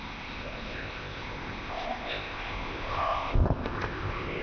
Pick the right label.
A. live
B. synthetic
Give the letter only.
B